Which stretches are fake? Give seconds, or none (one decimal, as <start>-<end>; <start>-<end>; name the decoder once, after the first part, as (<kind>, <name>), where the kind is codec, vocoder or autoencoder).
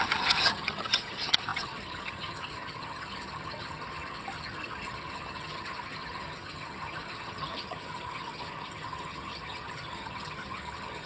0.0-11.1 (vocoder, HiFi-GAN)